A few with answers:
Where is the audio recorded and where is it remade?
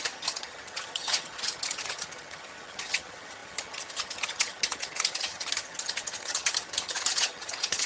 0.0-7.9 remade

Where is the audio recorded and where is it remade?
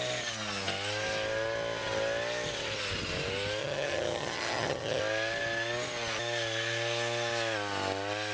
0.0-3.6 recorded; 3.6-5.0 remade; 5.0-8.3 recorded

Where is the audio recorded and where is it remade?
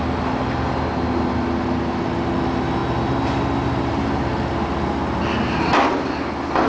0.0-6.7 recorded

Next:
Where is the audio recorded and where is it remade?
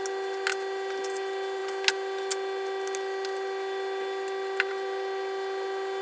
0.0-6.0 recorded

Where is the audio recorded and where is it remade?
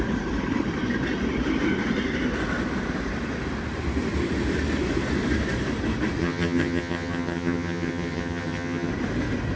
0.0-6.2 recorded; 6.2-8.9 remade; 8.9-9.6 recorded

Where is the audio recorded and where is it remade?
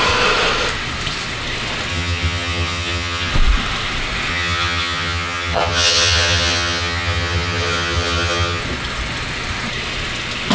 0.0-1.9 recorded; 1.9-3.3 remade; 3.3-4.3 recorded; 4.3-8.6 remade; 8.6-10.5 recorded